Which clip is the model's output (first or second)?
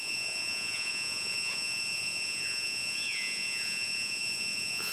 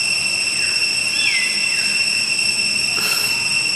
first